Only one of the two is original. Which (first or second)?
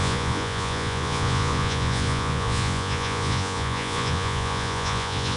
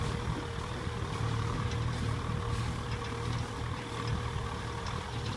second